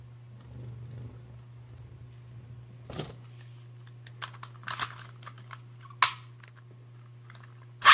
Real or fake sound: real